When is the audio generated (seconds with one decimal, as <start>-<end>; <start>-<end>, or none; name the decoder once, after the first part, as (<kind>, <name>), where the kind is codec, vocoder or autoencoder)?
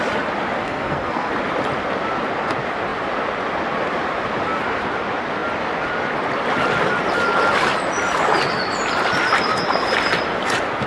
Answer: 0.6-1.3 (codec, SNAC)